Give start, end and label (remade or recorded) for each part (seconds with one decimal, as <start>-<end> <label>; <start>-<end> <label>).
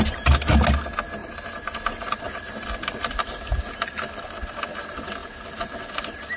0.0-1.2 recorded; 1.2-2.2 remade; 2.2-6.4 recorded